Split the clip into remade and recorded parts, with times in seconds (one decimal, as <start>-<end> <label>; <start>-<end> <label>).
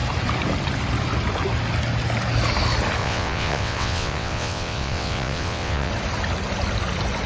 0.0-3.0 recorded; 3.0-5.9 remade; 5.9-7.3 recorded